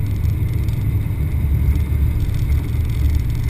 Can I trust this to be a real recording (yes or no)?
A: yes